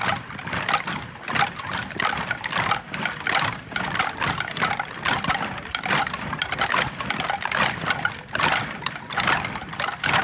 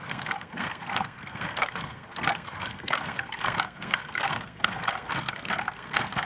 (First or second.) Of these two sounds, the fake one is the second